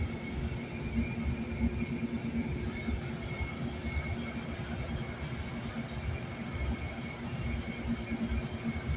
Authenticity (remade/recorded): recorded